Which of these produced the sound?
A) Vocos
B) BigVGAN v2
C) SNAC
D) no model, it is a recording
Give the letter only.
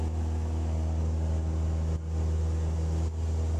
D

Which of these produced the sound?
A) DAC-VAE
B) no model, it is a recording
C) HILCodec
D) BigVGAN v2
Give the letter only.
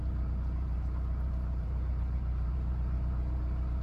D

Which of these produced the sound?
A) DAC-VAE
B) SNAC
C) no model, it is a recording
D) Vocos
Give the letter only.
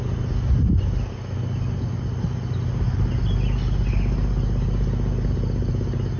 C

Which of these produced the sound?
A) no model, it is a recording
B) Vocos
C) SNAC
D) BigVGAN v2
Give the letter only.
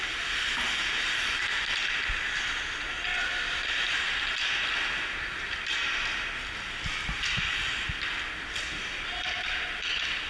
A